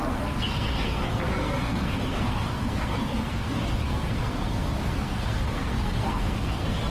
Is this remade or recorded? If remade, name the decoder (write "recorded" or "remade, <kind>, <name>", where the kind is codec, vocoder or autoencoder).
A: remade, codec, SNAC